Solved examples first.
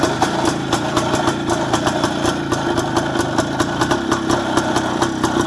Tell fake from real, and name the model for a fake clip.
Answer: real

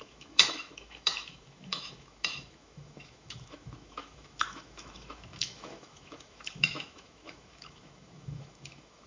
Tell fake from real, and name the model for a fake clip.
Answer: fake, autoencoder, DAC-VAE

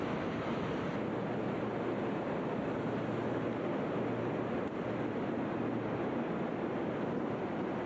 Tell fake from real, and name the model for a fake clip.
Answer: real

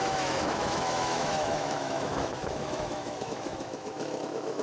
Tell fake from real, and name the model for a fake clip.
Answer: fake, autoencoder, DAC-VAE